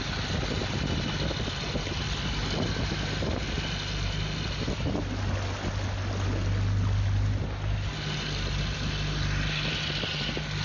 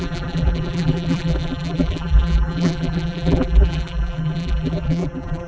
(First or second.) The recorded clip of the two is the first